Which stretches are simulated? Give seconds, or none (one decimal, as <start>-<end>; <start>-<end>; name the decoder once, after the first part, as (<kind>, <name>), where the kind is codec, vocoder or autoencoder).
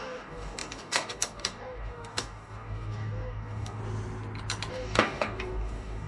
0.0-3.8 (codec, DAC); 4.7-6.1